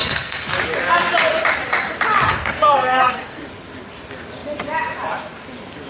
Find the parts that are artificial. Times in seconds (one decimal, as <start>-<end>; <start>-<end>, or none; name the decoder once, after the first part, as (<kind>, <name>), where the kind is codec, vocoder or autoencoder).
0.0-0.5 (codec, SNAC); 2.3-3.4